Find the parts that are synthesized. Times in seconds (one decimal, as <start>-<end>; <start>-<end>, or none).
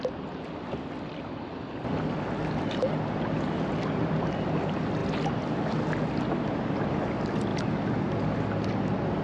none